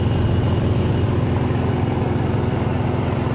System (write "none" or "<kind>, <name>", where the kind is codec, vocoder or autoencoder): none